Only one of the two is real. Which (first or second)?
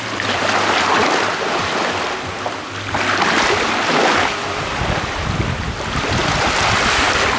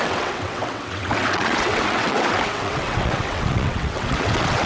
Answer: first